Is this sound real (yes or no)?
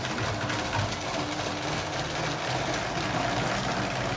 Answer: yes